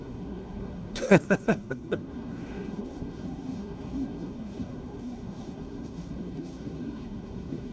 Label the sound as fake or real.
fake